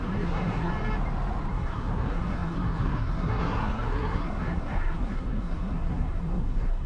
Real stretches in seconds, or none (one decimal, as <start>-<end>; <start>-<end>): 0.7-1.5